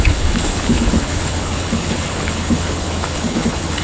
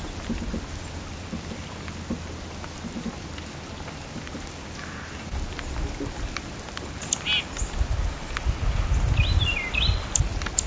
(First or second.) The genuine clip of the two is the second